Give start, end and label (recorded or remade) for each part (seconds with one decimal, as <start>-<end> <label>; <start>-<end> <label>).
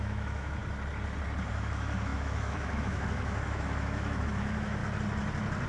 0.0-0.6 remade; 0.6-1.5 recorded; 1.5-4.8 remade; 4.8-5.7 recorded